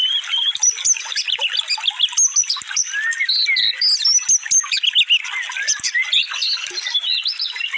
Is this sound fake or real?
real